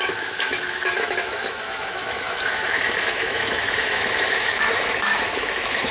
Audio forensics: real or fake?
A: fake